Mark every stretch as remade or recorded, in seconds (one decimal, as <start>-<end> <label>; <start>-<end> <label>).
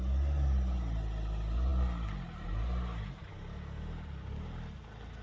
0.0-5.2 recorded